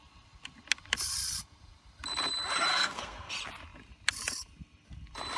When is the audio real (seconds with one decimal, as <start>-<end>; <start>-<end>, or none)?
0.0-2.7; 3.3-5.4